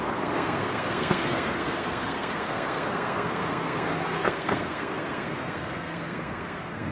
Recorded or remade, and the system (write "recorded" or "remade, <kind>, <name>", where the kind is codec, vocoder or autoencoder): remade, codec, SNAC